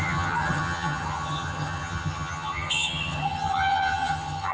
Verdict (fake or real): fake